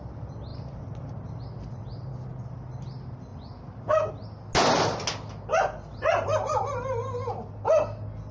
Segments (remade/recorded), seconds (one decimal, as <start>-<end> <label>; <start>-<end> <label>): 0.0-0.5 recorded; 0.5-1.4 remade; 1.4-3.3 recorded; 3.3-4.1 remade; 4.1-5.9 recorded; 5.9-6.6 remade; 6.6-8.3 recorded